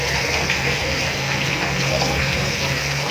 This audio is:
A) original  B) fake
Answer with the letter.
B